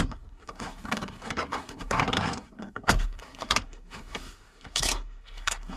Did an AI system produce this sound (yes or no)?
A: yes